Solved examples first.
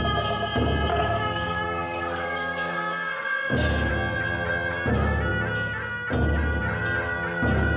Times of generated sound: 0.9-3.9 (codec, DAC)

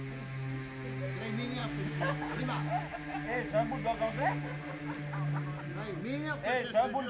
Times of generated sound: 1.6-2.4 (codec, DAC)

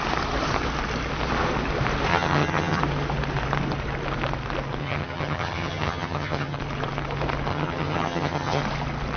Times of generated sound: 2.1-2.8 (vocoder, HiFi-GAN); 4.8-6.6; 7.5-8.6